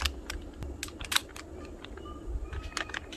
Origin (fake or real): real